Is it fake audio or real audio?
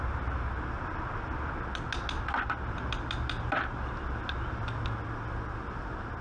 real